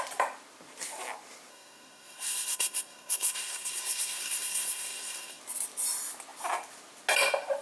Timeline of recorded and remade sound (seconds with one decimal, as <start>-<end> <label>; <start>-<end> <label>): 0.0-1.5 recorded; 1.5-5.4 remade; 5.4-7.6 recorded